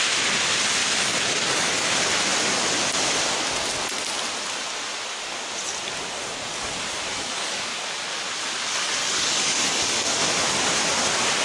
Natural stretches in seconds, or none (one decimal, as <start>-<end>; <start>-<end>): 0.0-0.8; 1.9-7.1; 7.6-9.0; 10.2-11.4